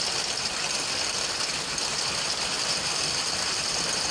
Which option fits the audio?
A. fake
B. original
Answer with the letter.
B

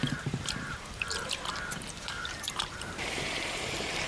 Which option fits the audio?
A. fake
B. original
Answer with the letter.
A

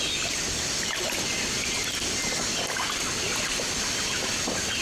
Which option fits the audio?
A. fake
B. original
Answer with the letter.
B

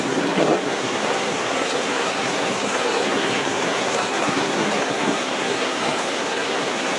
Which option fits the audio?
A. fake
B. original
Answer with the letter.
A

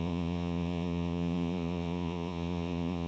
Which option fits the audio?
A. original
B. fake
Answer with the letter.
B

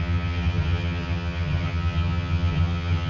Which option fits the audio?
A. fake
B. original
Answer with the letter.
A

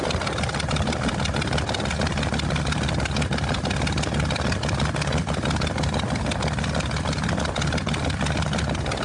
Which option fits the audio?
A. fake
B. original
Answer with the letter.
B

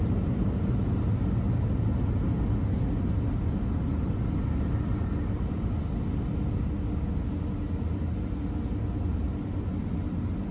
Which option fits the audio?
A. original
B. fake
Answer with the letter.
A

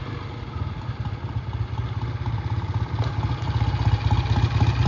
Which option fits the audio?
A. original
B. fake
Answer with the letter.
A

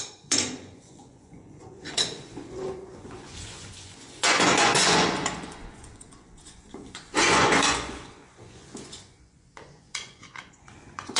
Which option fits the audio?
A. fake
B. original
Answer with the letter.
A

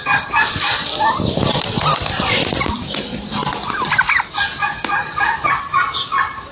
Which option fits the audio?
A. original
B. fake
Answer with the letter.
A